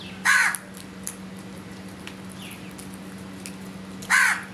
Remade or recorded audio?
recorded